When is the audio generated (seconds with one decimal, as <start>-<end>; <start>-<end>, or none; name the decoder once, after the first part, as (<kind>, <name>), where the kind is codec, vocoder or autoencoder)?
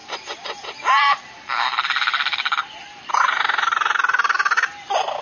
1.0-1.7 (vocoder, BigVGAN v2); 4.8-5.2